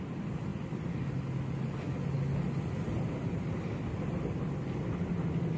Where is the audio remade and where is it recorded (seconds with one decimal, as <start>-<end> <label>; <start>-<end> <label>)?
0.0-5.6 recorded